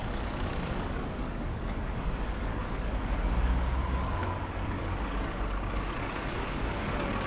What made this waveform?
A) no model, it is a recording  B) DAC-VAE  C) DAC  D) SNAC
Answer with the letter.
C